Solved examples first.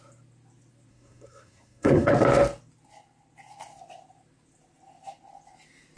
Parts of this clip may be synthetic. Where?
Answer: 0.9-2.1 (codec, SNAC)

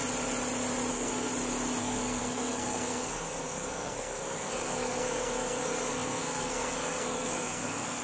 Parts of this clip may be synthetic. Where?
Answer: 0.9-1.3 (codec, SNAC); 1.8-8.0

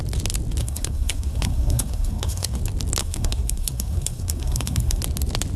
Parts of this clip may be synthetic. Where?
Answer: 0.6-2.6 (codec, SNAC); 3.0-5.0

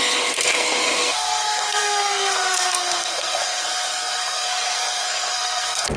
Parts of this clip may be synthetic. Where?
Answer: 0.0-6.0 (codec, SNAC)

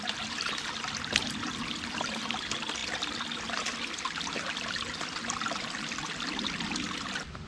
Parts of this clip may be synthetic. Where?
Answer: none

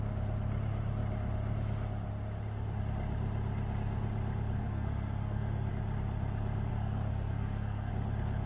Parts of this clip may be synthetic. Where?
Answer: 4.6-5.7 (codec, SNAC); 6.7-7.9